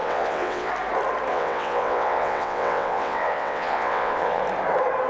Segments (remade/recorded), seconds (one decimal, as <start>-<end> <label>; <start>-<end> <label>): 0.0-0.7 remade; 0.7-1.3 recorded; 1.3-4.4 remade; 4.4-5.1 recorded